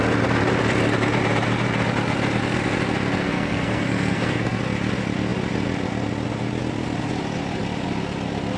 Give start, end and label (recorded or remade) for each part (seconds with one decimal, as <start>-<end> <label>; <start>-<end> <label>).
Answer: 0.0-3.2 recorded; 3.2-4.6 remade; 4.6-8.6 recorded